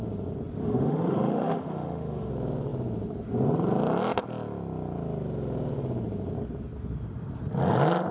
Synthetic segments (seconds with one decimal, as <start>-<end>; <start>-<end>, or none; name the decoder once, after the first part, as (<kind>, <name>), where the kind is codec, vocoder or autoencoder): 0.6-2.3 (autoencoder, DAC-VAE)